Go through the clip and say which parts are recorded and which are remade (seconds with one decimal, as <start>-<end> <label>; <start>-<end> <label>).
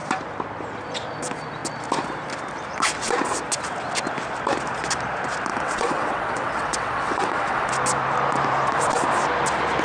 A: 0.0-5.5 recorded; 5.5-7.7 remade; 7.7-9.8 recorded